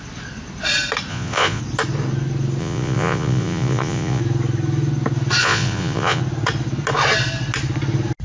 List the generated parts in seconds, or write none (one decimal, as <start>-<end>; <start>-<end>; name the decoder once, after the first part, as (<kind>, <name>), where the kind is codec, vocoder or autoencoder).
1.1-1.6 (vocoder, Vocos); 2.6-4.2; 5.4-6.2

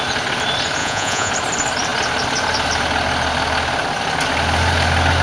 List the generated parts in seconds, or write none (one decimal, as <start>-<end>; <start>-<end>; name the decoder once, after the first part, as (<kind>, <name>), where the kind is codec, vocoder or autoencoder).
0.8-1.3 (vocoder, Vocos)

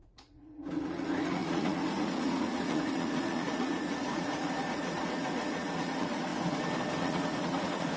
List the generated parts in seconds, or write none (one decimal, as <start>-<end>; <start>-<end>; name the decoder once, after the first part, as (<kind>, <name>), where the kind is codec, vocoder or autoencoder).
0.0-6.3 (vocoder, Vocos); 7.0-8.0

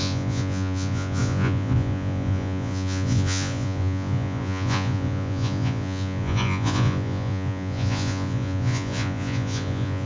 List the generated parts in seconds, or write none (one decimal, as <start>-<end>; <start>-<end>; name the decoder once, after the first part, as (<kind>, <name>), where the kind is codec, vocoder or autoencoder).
0.0-10.1 (vocoder, Vocos)

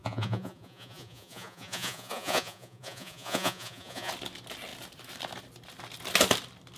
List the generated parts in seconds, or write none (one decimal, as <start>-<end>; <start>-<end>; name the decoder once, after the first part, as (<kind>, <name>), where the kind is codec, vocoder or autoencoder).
0.0-4.1 (vocoder, Vocos)